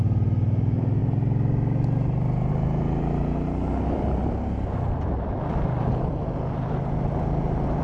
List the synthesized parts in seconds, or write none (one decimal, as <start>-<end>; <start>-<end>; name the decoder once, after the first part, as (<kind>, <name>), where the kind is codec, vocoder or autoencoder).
none